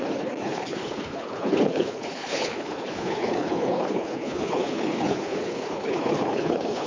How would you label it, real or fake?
fake